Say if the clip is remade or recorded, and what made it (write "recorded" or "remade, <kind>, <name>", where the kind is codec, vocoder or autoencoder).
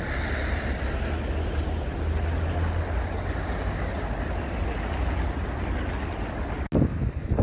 recorded